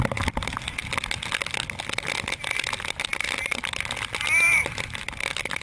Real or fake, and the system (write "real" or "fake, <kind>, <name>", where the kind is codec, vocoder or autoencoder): real